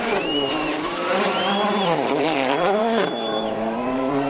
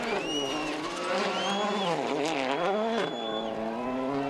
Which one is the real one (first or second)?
second